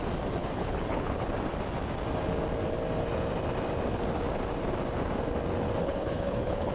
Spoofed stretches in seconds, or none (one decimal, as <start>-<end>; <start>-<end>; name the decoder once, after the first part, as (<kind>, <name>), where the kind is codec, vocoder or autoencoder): 0.4-1.3 (codec, HILCodec); 5.8-6.7